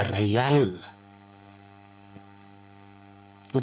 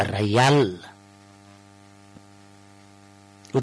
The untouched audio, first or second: second